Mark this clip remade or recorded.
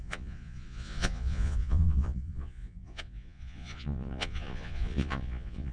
remade